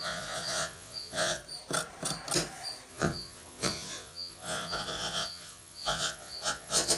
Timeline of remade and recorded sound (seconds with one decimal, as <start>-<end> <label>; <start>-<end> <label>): 0.0-1.4 remade; 1.4-2.9 recorded; 2.9-7.0 remade